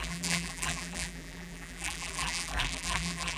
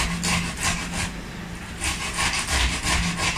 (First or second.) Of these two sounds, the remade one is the first